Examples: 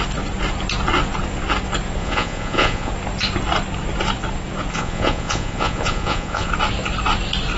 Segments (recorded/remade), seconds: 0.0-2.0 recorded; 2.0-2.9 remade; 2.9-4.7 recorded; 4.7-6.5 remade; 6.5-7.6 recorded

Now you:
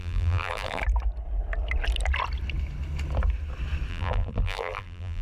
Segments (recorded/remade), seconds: 0.0-0.8 remade; 0.8-3.9 recorded; 3.9-5.2 remade

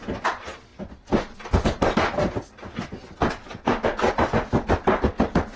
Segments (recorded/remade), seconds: 0.0-5.6 recorded

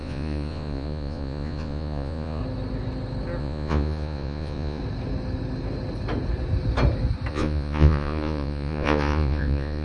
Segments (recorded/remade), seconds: 0.0-2.4 remade; 2.4-3.4 recorded; 3.4-4.8 remade; 4.8-7.3 recorded; 7.3-9.8 remade

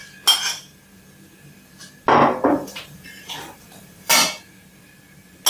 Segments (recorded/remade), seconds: 0.0-2.5 recorded; 2.5-4.1 remade; 4.1-5.5 recorded

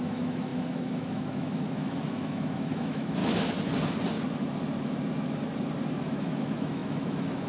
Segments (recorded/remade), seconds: 0.0-3.2 remade; 3.2-6.0 recorded; 6.0-7.5 remade

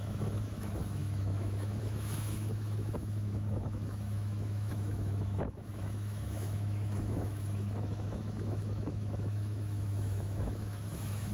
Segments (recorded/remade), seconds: 0.0-11.3 remade